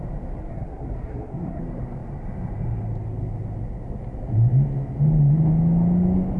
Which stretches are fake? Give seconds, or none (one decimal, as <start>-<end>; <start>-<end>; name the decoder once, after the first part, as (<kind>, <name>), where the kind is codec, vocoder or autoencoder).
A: 0.5-1.6 (codec, SNAC)